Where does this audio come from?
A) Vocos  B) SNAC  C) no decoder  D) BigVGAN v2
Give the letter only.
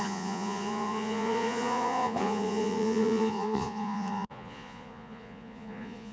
A